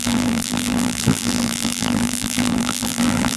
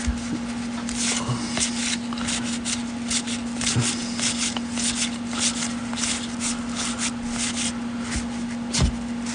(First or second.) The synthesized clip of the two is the first